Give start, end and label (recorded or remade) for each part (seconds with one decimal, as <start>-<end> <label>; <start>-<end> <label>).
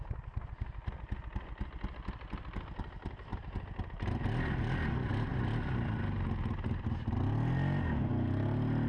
0.0-8.9 recorded